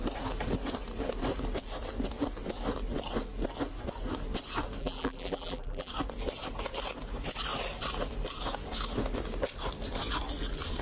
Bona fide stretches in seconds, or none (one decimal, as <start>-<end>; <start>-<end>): 0.0-4.8; 5.9-10.8